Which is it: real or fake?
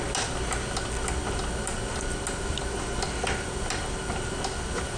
real